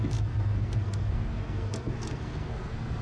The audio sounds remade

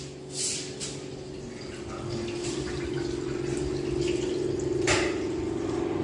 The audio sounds recorded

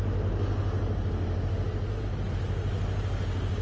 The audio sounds recorded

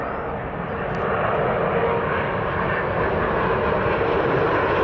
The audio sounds recorded